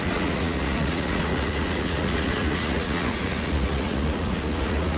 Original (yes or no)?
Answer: no